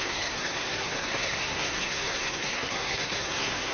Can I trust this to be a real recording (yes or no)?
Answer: no